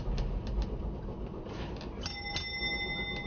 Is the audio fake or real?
real